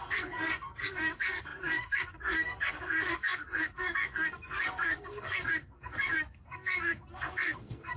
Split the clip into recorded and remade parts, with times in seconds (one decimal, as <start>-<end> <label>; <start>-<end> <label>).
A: 0.0-8.0 remade

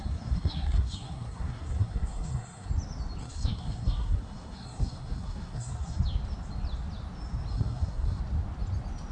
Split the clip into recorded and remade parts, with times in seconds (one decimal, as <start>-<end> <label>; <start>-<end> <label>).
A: 0.0-2.7 remade; 2.7-3.2 recorded; 3.2-6.0 remade; 6.0-7.5 recorded; 7.5-8.2 remade; 8.2-9.1 recorded

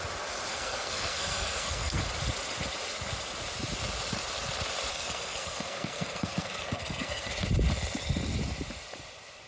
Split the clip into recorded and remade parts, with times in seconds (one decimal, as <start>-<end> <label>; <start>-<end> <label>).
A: 0.0-0.5 recorded; 0.5-2.0 remade; 2.0-4.9 recorded; 4.9-7.3 remade; 7.3-9.5 recorded

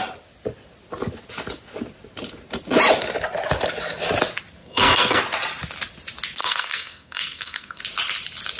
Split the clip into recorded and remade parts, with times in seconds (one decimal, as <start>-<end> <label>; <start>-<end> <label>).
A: 0.0-4.6 recorded; 4.6-5.2 remade; 5.2-6.4 recorded; 6.4-7.8 remade; 7.8-8.6 recorded

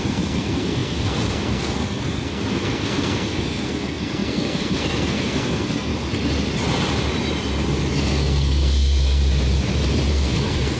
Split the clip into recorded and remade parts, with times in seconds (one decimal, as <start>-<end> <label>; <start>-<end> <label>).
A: 0.0-5.9 remade; 5.9-7.8 recorded; 7.8-9.2 remade; 9.2-10.1 recorded; 10.1-10.8 remade

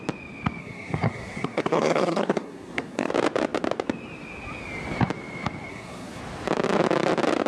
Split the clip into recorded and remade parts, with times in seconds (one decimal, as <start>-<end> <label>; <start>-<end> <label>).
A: 0.0-0.6 recorded; 0.6-3.1 remade; 3.1-5.7 recorded; 5.7-6.2 remade; 6.2-7.5 recorded

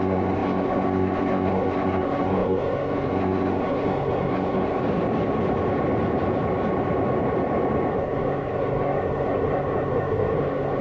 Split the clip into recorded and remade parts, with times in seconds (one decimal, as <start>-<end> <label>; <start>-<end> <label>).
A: 0.0-4.8 remade; 4.8-7.9 recorded; 7.9-10.8 remade

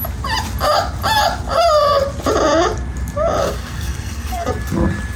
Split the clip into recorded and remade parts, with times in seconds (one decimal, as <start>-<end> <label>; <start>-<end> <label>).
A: 0.0-3.4 recorded; 3.4-4.5 remade; 4.5-5.2 recorded